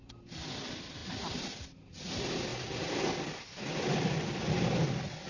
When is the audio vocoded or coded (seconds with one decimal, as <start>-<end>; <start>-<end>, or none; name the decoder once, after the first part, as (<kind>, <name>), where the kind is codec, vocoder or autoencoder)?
none